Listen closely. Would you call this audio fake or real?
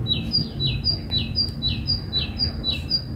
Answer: real